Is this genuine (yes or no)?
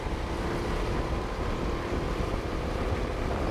yes